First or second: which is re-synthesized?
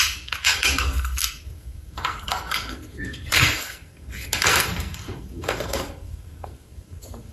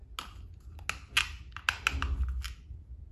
first